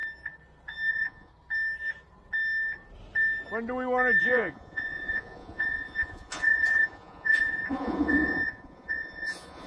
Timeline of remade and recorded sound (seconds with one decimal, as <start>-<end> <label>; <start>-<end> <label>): 0.0-0.9 recorded; 0.9-1.3 remade; 1.3-4.2 recorded; 4.2-9.7 remade